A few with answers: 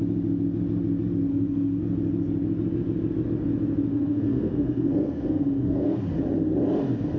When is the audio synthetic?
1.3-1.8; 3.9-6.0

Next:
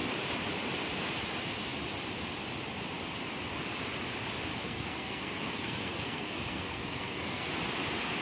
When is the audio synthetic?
4.5-7.5

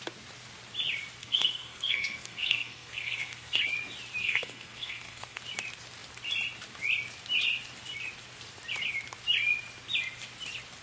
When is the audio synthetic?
1.2-3.6; 4.2-5.4

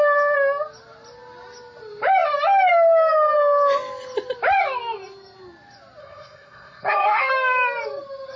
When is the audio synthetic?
6.0-7.3